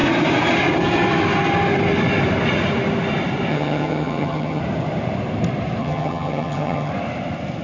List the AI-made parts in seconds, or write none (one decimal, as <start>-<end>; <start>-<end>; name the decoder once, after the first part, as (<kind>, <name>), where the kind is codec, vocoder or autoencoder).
3.5-4.6 (vocoder, HiFi-GAN); 5.8-6.9